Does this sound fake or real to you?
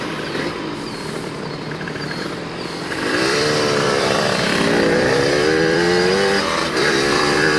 fake